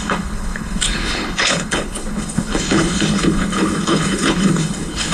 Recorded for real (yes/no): no